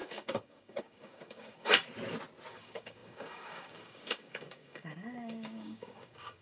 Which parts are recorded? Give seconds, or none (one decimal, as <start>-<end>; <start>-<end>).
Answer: 1.8-2.5